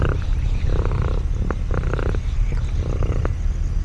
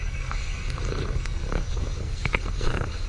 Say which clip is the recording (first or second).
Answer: first